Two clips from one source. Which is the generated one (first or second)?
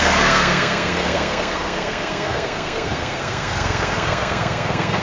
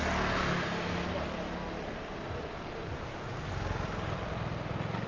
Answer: first